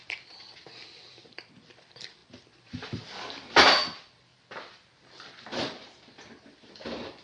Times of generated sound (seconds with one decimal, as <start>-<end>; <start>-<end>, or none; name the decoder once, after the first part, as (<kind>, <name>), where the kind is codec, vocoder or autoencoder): 0.0-4.3 (vocoder, BigVGAN v2); 5.0-7.2